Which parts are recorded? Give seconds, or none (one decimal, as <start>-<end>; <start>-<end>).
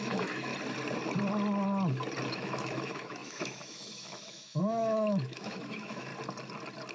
0.5-2.3; 6.1-6.9